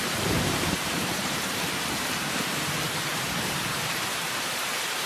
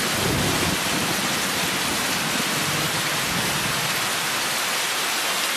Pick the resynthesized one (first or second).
first